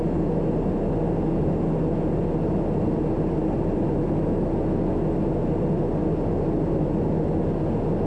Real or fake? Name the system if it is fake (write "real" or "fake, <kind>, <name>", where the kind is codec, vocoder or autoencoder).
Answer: real